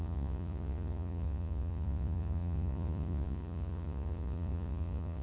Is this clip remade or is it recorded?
remade